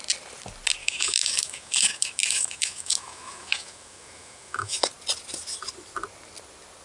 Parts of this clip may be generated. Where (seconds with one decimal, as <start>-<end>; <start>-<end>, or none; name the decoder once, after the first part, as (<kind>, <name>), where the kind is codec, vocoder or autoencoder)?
0.8-4.9 (autoencoder, DAC-VAE)